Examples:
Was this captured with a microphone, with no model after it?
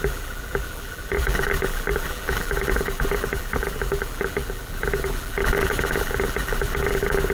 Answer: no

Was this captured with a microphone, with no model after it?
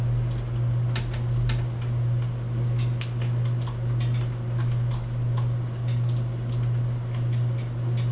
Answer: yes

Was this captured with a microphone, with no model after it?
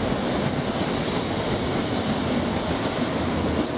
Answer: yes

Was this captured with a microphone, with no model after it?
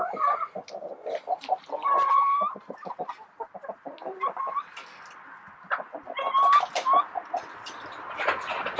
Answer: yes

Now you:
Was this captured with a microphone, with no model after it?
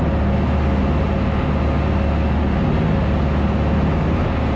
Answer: yes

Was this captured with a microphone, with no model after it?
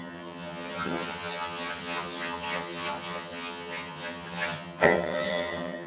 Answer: no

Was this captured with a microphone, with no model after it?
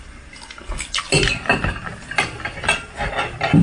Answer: yes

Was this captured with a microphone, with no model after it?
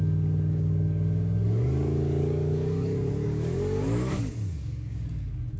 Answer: no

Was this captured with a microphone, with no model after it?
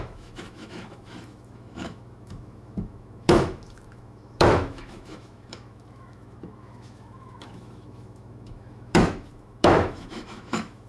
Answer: no